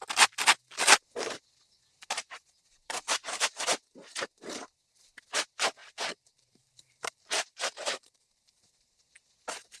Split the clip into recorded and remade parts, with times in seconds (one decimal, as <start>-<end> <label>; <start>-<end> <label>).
0.0-5.8 recorded; 5.8-9.0 remade; 9.0-9.8 recorded